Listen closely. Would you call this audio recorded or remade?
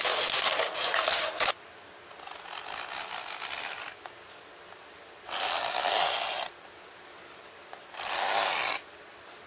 recorded